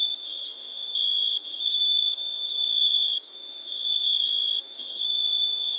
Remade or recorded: remade